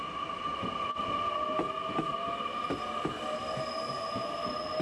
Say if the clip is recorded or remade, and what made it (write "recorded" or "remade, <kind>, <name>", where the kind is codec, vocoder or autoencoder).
recorded